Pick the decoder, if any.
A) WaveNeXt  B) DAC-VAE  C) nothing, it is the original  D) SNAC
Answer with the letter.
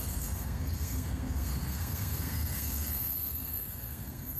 D